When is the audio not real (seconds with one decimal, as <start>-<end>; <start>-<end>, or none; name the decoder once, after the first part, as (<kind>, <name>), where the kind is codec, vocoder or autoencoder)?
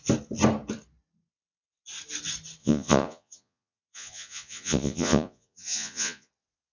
2.6-6.3 (vocoder, Vocos)